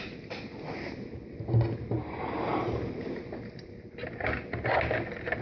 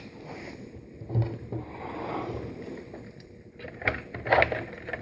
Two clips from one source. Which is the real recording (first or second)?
first